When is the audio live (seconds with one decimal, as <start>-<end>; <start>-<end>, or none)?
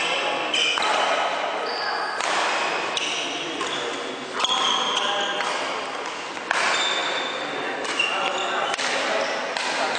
0.0-10.0